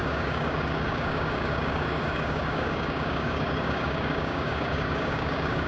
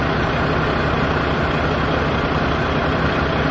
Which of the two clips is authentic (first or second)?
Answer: second